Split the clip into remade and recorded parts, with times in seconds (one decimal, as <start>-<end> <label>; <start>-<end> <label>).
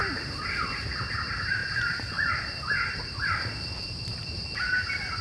0.0-5.2 remade